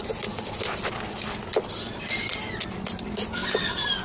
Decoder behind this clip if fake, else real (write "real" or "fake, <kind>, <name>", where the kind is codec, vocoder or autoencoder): real